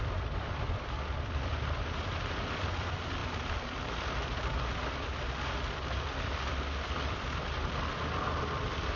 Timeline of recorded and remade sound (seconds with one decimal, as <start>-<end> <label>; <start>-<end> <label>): 0.0-9.0 remade